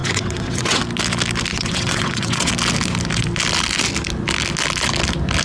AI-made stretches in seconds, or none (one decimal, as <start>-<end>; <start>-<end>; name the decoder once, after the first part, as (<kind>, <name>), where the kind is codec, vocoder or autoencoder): 0.0-0.8 (vocoder, WaveNeXt); 1.5-2.5